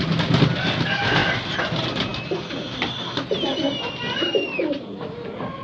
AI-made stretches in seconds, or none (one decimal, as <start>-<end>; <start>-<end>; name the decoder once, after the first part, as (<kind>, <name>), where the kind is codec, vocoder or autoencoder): none